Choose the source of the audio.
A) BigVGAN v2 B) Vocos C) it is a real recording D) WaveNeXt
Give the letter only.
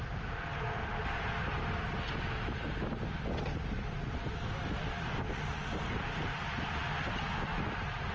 C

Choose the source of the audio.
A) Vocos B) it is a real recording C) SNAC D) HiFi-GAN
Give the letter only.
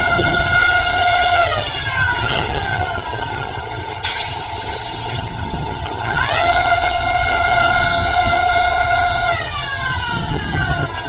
D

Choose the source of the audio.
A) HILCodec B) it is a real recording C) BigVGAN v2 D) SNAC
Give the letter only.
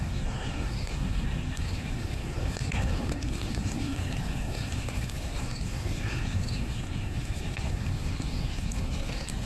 D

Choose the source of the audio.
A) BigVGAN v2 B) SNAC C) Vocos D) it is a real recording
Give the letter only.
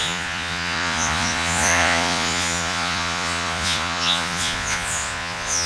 C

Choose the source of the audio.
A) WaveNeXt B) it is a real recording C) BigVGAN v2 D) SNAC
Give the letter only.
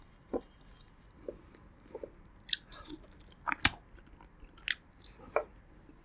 B